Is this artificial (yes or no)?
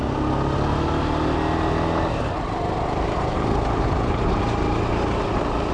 no